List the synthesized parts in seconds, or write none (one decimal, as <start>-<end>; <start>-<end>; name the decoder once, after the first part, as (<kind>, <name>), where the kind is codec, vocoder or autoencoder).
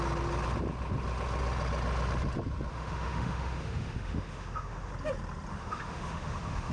2.7-4.9 (autoencoder, DAC-VAE); 5.5-6.7